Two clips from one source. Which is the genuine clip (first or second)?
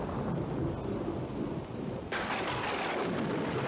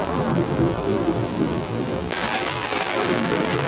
first